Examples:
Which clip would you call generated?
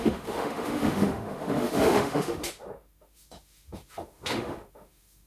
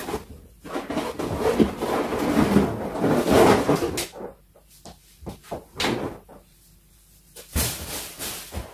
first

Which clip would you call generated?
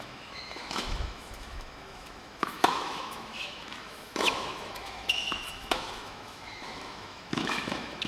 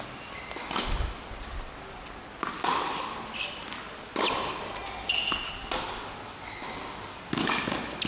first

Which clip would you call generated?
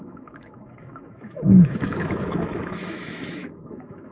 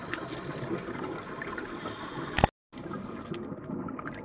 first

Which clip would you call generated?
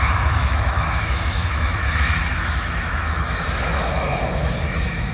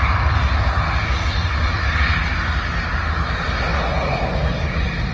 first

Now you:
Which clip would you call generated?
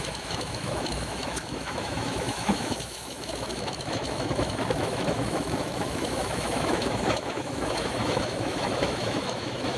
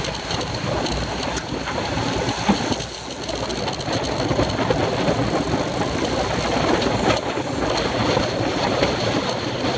first